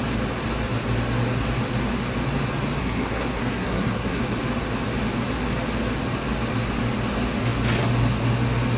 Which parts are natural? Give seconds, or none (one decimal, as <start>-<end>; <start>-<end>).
0.0-2.8; 4.2-8.8